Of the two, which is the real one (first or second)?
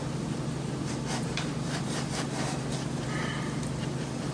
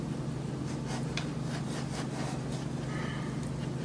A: second